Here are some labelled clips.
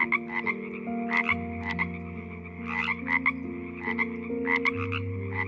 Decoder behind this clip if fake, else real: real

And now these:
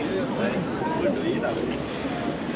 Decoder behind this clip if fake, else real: real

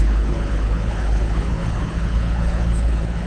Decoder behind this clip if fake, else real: fake, codec, HILCodec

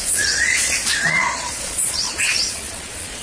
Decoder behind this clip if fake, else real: fake, vocoder, Vocos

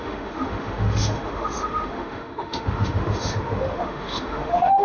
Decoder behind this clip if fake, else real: fake, autoencoder, DAC-VAE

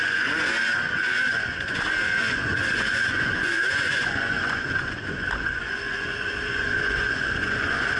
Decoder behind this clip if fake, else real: fake, vocoder, Vocos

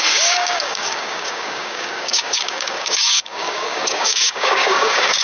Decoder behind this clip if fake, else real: fake, codec, DAC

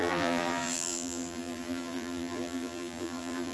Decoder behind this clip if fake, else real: fake, vocoder, BigVGAN v2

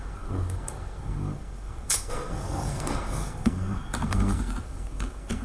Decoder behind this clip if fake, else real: fake, codec, SNAC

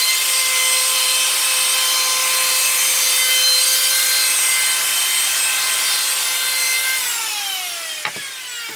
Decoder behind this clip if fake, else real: real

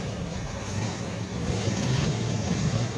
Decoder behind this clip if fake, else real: fake, codec, SNAC